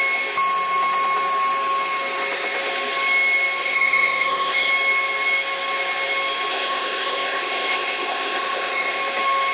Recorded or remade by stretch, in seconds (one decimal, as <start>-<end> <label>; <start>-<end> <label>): 0.0-3.6 recorded; 3.6-4.7 remade; 4.7-6.5 recorded; 6.5-9.0 remade; 9.0-9.5 recorded